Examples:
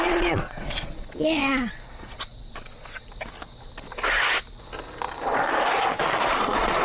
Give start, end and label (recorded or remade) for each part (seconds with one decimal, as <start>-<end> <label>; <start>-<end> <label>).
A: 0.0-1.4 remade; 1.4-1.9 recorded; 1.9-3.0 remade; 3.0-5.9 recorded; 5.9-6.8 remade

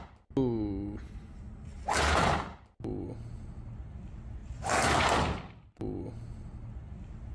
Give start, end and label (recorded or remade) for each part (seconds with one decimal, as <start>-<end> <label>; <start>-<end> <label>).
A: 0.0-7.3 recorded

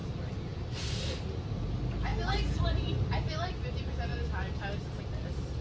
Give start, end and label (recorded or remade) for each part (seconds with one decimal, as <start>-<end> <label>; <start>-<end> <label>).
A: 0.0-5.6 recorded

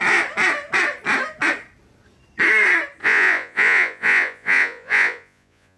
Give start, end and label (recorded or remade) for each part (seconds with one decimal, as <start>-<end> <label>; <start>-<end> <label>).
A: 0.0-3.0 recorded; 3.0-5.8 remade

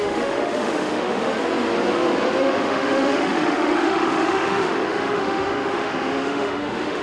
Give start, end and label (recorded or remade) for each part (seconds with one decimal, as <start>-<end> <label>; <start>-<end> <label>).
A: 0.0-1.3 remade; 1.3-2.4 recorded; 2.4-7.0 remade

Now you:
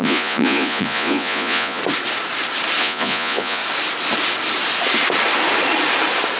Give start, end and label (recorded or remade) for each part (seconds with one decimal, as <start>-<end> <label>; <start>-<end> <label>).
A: 0.0-1.8 remade; 1.8-2.8 recorded; 2.8-3.6 remade; 3.6-6.4 recorded

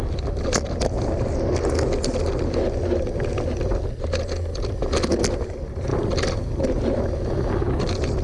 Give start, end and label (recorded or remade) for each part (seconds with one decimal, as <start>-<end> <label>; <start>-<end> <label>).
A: 0.0-5.9 recorded; 5.9-6.4 remade; 6.4-8.2 recorded

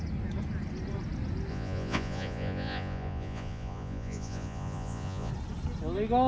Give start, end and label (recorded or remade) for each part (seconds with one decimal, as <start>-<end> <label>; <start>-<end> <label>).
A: 0.0-1.5 recorded; 1.5-5.3 remade; 5.3-6.3 recorded